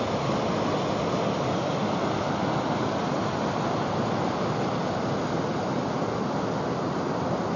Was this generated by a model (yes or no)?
no